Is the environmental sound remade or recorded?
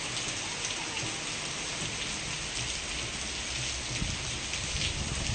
recorded